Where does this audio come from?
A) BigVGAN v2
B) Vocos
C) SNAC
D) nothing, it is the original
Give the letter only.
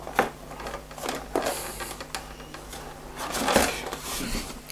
D